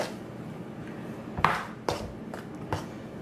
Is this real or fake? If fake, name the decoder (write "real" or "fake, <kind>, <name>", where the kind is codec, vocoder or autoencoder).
real